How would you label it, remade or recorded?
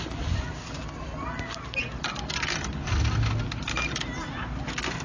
recorded